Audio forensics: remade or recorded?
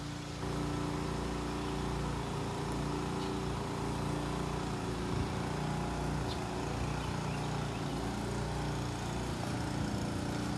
recorded